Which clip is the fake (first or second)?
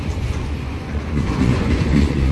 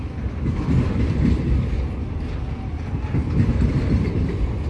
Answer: first